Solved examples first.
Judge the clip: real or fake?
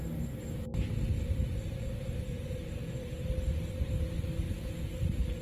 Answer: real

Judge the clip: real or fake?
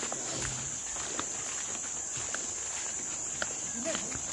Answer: real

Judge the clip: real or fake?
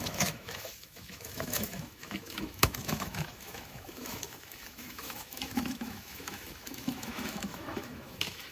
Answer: fake